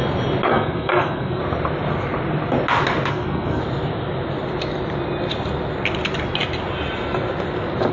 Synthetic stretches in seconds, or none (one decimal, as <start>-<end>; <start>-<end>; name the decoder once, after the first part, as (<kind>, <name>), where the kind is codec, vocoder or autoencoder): 0.5-1.4 (codec, SNAC); 3.1-3.6

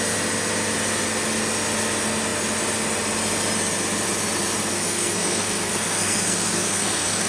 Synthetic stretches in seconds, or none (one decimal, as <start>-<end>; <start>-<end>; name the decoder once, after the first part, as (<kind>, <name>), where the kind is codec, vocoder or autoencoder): 4.7-7.3 (codec, SNAC)